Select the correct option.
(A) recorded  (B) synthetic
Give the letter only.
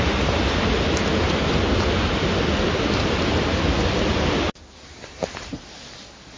A